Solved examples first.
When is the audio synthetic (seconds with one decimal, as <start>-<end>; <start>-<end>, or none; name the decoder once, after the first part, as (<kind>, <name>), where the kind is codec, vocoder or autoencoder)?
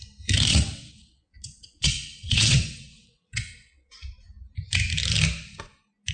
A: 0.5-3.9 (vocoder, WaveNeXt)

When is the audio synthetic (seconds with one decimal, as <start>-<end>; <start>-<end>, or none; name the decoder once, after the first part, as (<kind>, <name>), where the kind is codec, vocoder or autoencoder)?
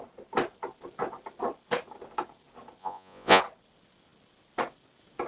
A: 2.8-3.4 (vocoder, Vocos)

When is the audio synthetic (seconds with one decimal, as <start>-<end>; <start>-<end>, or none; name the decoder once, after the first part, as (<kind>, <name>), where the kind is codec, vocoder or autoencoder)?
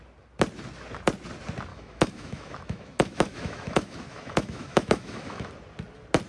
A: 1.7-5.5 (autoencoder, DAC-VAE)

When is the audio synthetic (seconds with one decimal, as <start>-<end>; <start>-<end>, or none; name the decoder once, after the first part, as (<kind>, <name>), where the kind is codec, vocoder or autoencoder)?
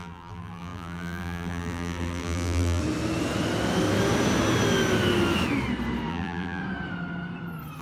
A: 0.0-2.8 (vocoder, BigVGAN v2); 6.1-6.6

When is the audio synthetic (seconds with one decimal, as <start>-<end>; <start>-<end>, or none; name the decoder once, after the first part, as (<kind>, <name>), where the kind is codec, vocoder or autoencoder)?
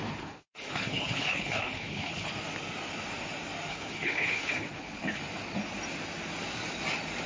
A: 0.0-2.3 (codec, HILCodec); 3.7-5.2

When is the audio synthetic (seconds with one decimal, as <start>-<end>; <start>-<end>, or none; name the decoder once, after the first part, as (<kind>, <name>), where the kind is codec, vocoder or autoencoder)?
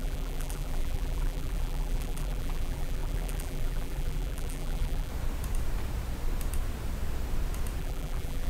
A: 0.0-5.1 (vocoder, BigVGAN v2); 7.8-8.5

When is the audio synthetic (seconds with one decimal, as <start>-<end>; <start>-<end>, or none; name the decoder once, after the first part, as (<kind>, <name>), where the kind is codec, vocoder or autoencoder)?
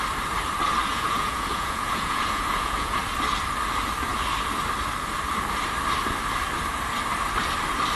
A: 0.9-3.0 (vocoder, Vocos)